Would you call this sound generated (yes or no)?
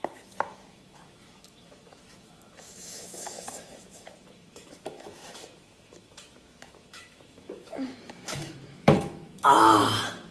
yes